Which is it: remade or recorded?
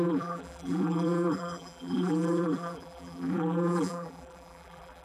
remade